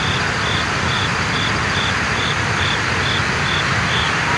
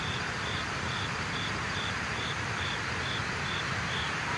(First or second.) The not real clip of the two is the second